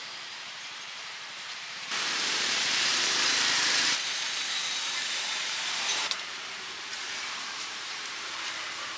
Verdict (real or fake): fake